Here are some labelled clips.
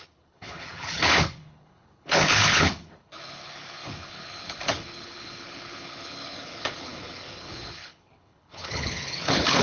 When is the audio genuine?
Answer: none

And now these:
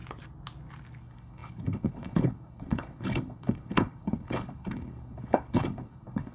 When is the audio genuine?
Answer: 0.0-1.0

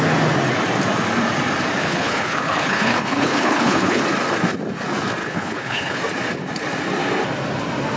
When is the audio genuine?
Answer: 0.0-1.8; 4.0-5.2; 6.0-8.0

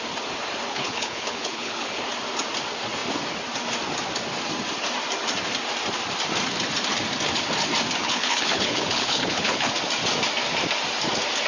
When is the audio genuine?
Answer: 0.0-0.7; 2.0-8.0; 9.7-11.5

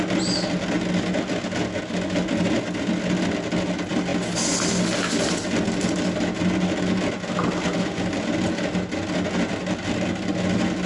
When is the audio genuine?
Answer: 0.0-10.9

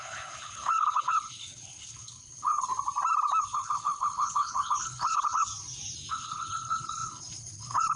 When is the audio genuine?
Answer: 2.7-3.4; 5.5-6.1

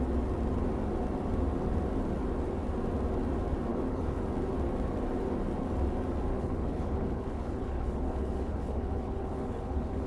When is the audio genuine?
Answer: 0.0-3.7; 4.2-6.3